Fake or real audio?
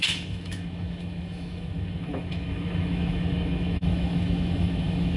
fake